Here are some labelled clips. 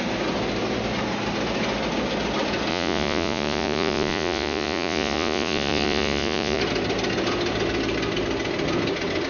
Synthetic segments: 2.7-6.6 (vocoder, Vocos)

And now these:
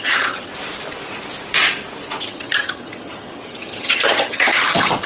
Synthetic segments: 0.0-0.5 (vocoder, HiFi-GAN); 2.2-5.1

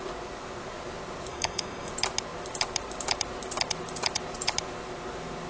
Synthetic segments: 1.3-1.9 (codec, DAC)

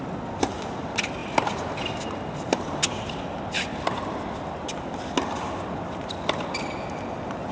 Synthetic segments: none